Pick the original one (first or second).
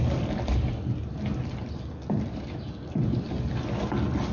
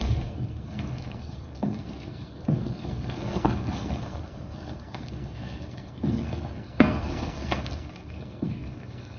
first